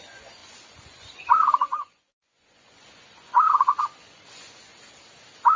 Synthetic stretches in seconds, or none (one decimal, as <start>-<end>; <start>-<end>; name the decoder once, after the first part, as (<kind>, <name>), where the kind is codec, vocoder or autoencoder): 0.0-4.7 (vocoder, Vocos)